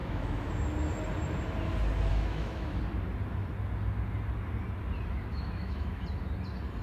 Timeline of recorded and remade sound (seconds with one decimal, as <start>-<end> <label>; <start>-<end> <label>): 0.0-0.5 remade; 0.5-2.1 recorded; 2.1-2.8 remade; 2.8-5.3 recorded; 5.3-6.0 remade; 6.0-6.8 recorded